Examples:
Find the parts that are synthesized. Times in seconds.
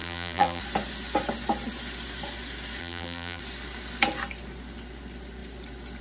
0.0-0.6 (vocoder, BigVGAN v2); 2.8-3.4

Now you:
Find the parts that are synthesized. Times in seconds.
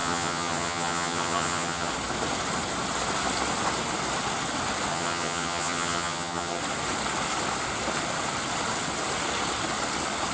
0.0-1.9 (vocoder, HiFi-GAN); 4.9-6.6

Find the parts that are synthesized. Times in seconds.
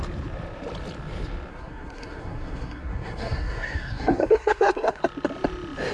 1.5-5.0 (codec, SNAC)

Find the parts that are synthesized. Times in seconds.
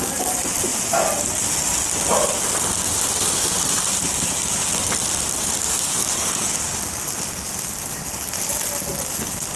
5.6-6.5 (codec, DAC)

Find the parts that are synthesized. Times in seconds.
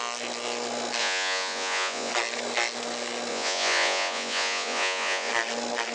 1.0-2.1 (vocoder, Vocos); 3.3-5.3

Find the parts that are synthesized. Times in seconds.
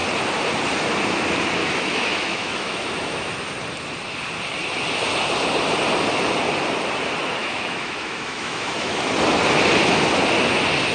1.6-3.3 (autoencoder, DAC-VAE); 7.4-9.1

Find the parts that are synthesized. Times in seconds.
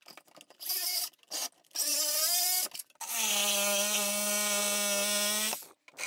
none